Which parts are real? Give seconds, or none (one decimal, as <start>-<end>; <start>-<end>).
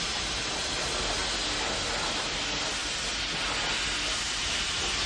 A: 0.0-5.1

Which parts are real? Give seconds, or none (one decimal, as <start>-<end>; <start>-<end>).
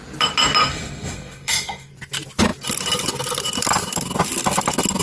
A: 0.0-0.6; 1.9-5.0